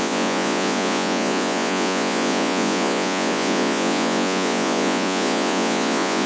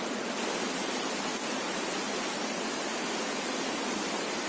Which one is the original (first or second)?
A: second